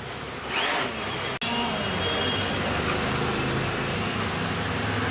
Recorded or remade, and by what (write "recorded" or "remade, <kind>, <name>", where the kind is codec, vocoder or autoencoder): recorded